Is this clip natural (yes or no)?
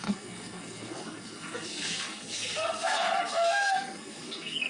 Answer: no